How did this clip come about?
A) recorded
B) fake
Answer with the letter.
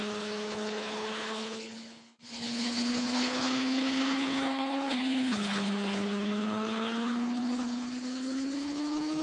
B